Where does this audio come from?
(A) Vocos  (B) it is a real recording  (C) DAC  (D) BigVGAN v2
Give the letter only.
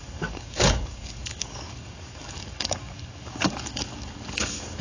C